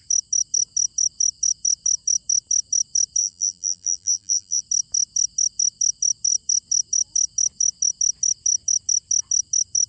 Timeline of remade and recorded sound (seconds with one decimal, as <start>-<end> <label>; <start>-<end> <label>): 0.0-3.2 recorded; 3.2-4.6 remade; 4.6-9.9 recorded

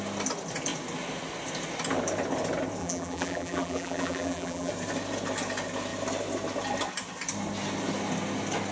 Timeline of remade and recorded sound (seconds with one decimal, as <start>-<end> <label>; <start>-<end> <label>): 0.0-2.8 recorded; 2.8-4.7 remade; 4.7-8.7 recorded

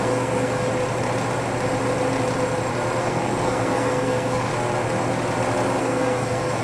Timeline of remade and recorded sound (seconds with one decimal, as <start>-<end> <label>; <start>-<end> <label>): 0.0-0.7 remade; 0.7-3.0 recorded; 3.0-4.5 remade; 4.5-5.8 recorded; 5.8-6.6 remade

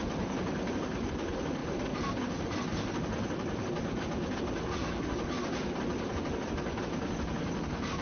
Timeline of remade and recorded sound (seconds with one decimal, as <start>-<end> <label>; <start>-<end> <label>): 0.0-8.0 recorded

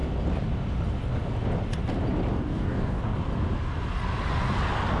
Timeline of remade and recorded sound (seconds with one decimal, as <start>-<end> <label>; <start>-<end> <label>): 0.0-2.3 recorded; 2.3-3.0 remade; 3.0-5.0 recorded

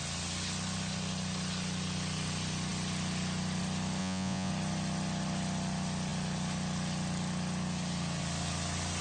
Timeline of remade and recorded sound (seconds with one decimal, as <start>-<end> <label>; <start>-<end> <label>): 0.0-4.0 recorded; 4.0-4.5 remade; 4.5-9.0 recorded